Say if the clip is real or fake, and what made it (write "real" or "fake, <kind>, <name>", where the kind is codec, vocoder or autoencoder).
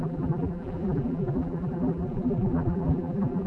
fake, vocoder, BigVGAN v2